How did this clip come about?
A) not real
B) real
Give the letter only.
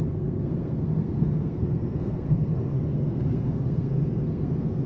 A